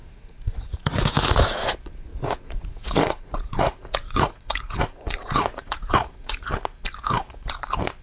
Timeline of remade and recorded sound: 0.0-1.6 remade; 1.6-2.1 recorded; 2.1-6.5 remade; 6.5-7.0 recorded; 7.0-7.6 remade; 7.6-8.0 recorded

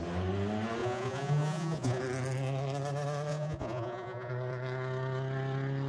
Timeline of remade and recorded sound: 0.0-0.8 recorded; 0.8-2.0 remade; 2.0-3.3 recorded; 3.3-4.3 remade; 4.3-5.9 recorded

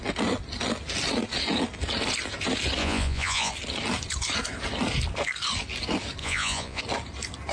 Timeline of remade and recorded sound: 0.0-2.8 recorded; 2.8-3.5 remade; 3.5-6.2 recorded; 6.2-6.8 remade; 6.8-7.5 recorded

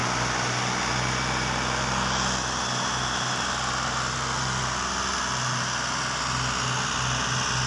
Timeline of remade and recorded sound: 0.0-7.7 recorded

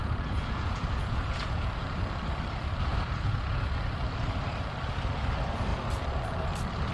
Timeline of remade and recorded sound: 0.0-1.8 remade; 1.8-2.9 recorded; 2.9-3.7 remade; 3.7-6.9 recorded